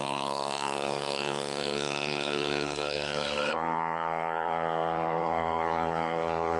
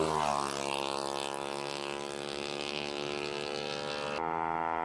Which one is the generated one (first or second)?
first